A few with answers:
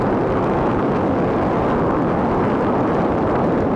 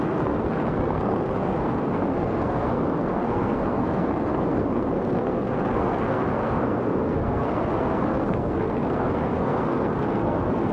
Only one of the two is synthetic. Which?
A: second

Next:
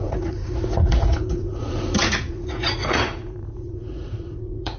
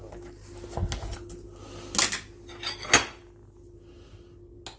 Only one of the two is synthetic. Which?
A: first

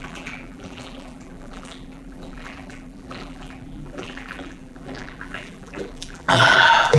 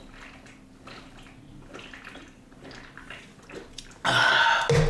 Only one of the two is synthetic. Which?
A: first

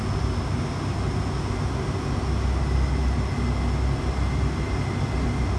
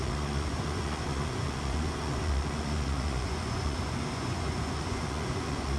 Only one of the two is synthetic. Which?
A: second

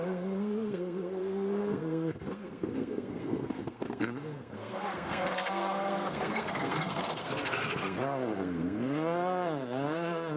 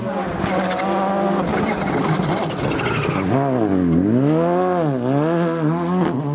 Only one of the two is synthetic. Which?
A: first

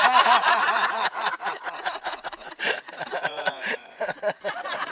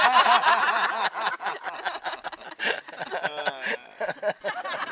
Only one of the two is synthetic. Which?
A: first